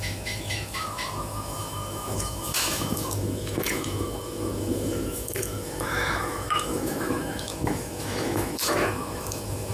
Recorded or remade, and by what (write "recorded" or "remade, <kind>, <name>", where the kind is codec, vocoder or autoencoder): remade, autoencoder, DAC-VAE